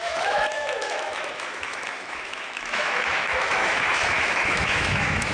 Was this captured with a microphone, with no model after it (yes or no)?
no